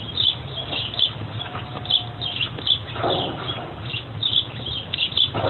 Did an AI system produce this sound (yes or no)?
no